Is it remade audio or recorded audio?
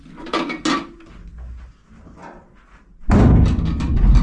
recorded